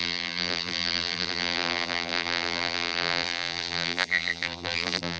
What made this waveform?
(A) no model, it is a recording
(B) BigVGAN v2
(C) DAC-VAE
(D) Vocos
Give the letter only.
B